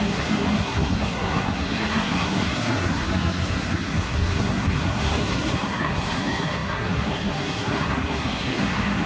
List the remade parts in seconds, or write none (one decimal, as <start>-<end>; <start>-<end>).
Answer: 0.0-9.1